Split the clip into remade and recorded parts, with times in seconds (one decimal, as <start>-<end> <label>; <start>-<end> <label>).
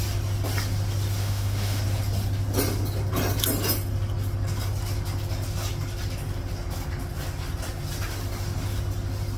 0.0-1.2 recorded; 1.2-1.8 remade; 1.8-9.4 recorded